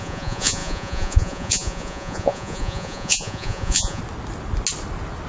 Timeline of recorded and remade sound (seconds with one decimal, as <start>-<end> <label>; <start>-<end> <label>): 0.0-4.0 remade; 4.0-5.3 recorded